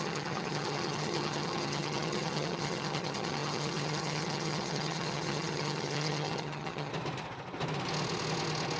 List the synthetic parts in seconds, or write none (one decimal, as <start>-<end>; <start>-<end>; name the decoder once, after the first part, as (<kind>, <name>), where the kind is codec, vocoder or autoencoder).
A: 0.0-6.9 (vocoder, HiFi-GAN)